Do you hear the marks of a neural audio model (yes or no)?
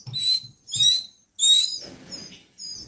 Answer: no